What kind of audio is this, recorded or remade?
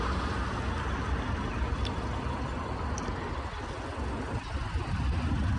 recorded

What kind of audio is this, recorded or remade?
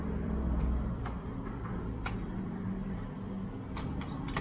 remade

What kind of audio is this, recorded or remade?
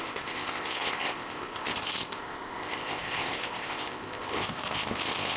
remade